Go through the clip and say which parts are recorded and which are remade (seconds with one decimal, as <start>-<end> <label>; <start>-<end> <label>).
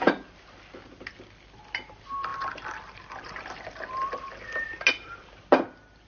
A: 0.0-6.1 recorded